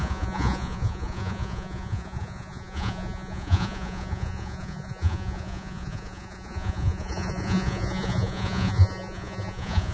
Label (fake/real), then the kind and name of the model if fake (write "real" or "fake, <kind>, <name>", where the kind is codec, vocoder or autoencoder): fake, vocoder, Vocos